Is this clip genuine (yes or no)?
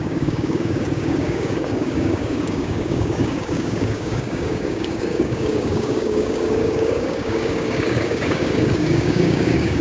no